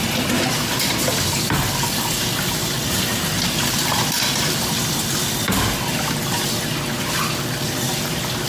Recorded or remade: recorded